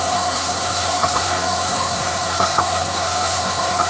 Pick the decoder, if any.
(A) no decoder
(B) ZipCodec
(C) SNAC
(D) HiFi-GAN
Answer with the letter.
C